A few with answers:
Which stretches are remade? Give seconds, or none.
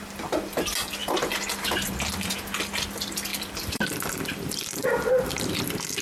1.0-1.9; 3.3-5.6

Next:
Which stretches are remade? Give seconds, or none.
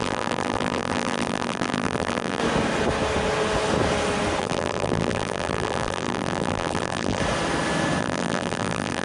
0.0-2.4; 4.4-7.2; 8.0-9.0